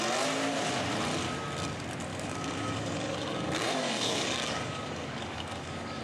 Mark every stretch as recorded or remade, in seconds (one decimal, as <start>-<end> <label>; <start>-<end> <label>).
0.0-2.1 recorded; 2.1-6.0 remade

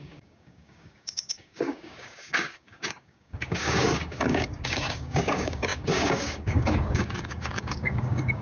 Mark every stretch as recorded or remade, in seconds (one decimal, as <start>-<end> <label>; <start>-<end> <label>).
0.0-8.4 remade

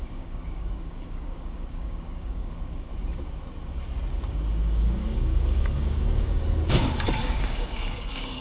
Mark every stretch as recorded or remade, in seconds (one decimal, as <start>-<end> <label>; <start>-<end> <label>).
0.0-2.9 remade; 2.9-4.5 recorded; 4.5-8.4 remade

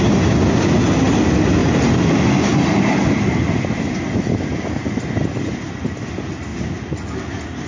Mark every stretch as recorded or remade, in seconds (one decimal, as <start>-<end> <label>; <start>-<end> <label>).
0.0-7.7 recorded

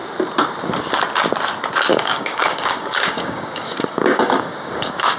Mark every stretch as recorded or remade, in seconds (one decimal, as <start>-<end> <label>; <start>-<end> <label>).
0.0-1.9 recorded; 1.9-5.2 remade